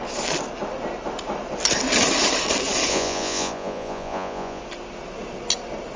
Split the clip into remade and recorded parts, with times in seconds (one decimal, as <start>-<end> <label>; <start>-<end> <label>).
0.0-2.9 recorded; 2.9-4.6 remade; 4.6-6.0 recorded